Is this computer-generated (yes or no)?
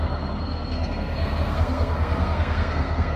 yes